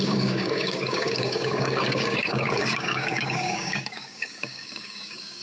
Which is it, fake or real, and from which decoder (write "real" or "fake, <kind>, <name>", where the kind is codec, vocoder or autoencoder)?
fake, codec, DAC